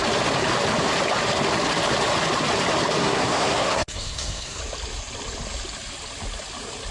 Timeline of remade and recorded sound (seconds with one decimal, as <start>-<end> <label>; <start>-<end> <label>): 0.0-3.0 recorded; 3.0-4.6 remade; 4.6-6.9 recorded